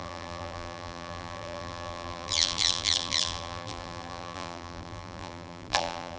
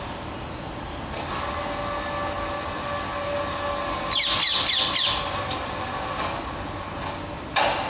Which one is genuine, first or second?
second